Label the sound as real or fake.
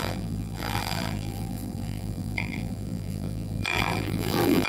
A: fake